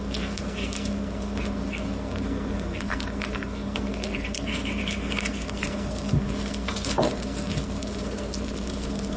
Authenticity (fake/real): fake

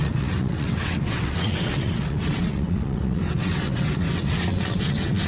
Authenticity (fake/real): fake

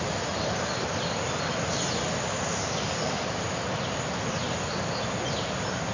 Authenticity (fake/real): real